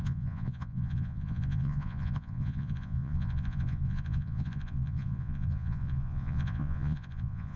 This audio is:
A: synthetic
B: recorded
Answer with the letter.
A